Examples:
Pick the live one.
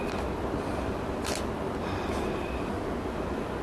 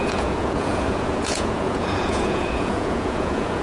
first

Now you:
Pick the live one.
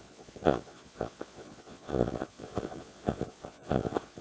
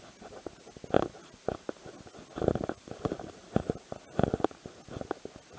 second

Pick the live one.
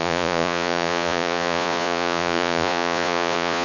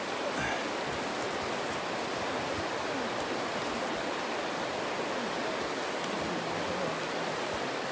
second